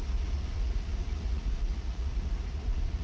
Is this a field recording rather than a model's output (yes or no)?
no